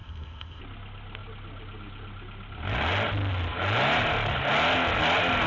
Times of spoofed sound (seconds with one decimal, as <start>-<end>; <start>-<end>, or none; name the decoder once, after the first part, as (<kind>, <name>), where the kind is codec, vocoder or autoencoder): 0.0-0.6 (codec, ZipCodec)